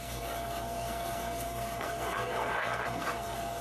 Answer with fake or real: fake